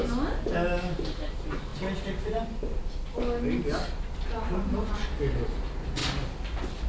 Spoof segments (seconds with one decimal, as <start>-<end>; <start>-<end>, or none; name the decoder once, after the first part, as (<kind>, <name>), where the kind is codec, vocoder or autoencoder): none